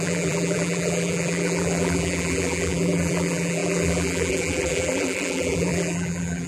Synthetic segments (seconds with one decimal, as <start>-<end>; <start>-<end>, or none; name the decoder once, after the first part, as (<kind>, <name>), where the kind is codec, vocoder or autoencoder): 0.0-6.5 (vocoder, BigVGAN v2)